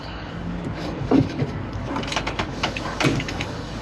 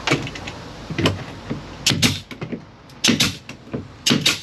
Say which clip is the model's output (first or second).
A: first